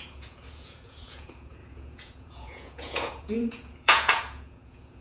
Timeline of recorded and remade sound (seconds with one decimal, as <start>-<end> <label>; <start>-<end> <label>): 0.0-5.0 remade